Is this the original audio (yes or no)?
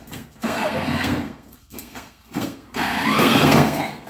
no